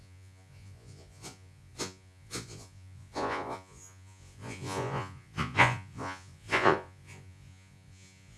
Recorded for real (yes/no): no